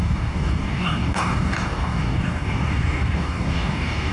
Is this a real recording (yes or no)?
no